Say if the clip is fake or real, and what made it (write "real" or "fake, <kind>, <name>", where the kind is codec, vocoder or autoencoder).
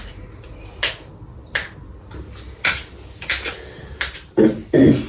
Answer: real